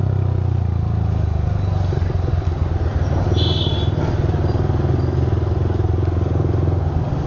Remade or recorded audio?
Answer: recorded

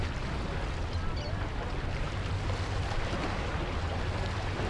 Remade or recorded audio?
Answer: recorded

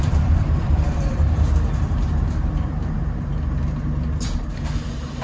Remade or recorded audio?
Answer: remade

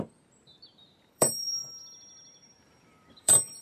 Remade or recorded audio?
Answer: remade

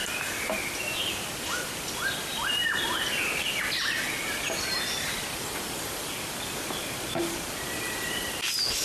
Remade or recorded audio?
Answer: recorded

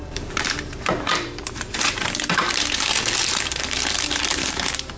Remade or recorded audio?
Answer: remade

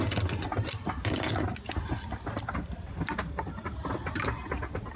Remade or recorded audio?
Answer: recorded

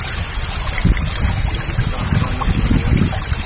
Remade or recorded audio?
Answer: remade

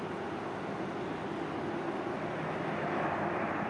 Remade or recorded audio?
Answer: recorded